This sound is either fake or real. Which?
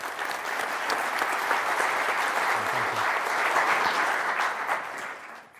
real